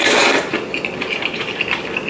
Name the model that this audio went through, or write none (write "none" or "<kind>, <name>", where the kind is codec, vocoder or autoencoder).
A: none